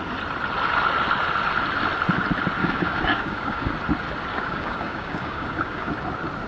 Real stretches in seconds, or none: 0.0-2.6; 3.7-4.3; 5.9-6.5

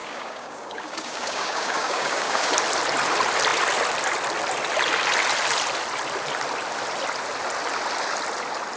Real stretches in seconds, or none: 2.5-8.8

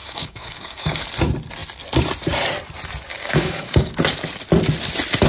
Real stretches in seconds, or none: 1.1-3.1; 3.9-5.3

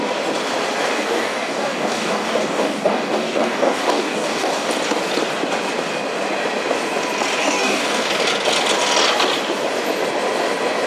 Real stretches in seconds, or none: 0.0-0.9; 4.7-7.4; 8.1-10.9

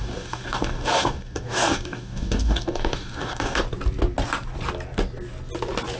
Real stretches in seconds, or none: 3.6-6.0

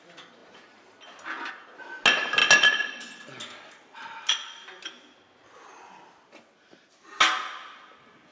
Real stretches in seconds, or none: 0.0-8.3

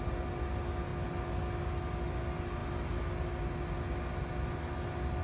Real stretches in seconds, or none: 0.0-5.2